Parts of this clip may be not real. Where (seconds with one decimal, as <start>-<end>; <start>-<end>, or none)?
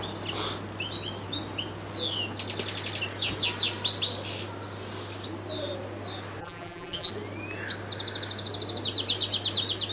6.4-7.1